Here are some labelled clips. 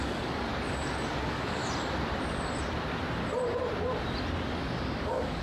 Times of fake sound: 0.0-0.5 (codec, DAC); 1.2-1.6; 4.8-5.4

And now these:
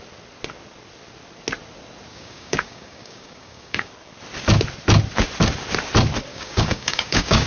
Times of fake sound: 2.1-3.9 (codec, DAC); 6.3-7.5

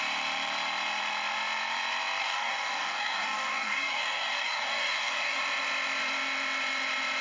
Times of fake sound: 2.2-5.4 (codec, DAC)

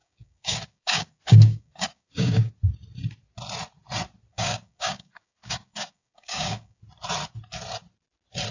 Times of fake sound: 0.0-2.5 (codec, DAC); 4.3-6.8